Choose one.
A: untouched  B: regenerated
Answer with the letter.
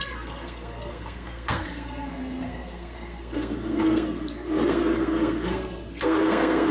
B